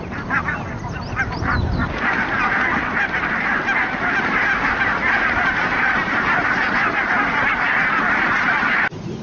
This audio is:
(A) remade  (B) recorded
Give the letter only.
B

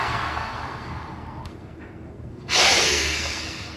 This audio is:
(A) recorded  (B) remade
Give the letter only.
B